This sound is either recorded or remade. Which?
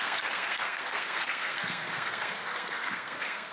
remade